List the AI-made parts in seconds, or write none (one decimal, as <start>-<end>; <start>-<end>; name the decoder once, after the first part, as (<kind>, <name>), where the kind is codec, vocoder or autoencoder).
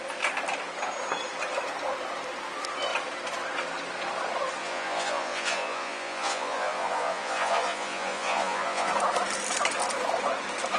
4.6-8.9 (vocoder, Vocos)